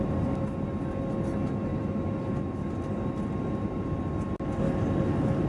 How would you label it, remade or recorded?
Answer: recorded